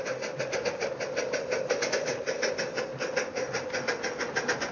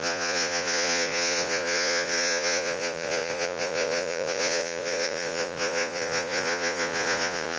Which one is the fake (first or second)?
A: second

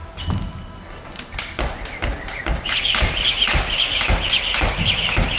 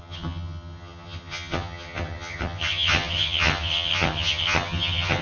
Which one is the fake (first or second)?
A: second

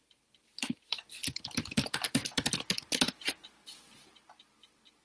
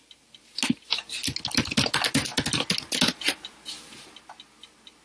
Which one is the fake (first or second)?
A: first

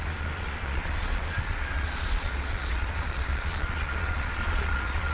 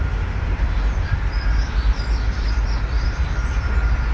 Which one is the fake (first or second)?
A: first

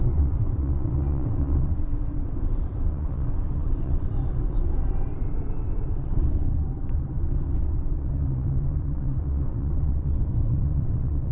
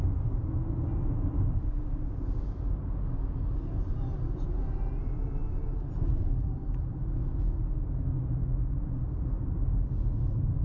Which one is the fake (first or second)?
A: first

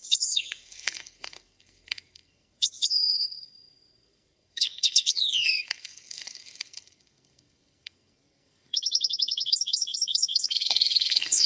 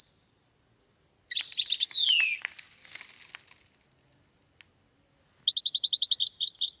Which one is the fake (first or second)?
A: first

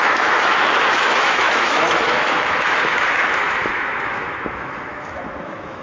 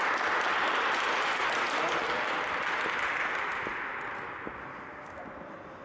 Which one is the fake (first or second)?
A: first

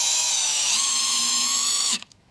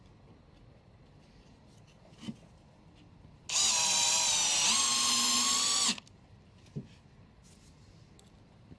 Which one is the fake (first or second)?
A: first